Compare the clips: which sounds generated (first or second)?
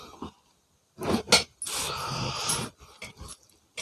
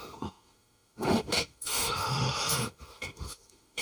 second